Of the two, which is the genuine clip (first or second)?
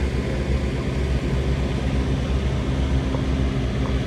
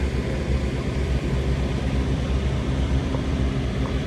first